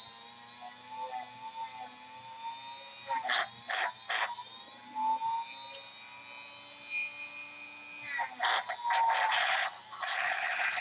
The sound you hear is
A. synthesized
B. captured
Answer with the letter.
B